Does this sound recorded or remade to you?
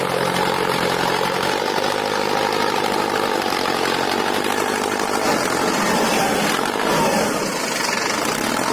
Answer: recorded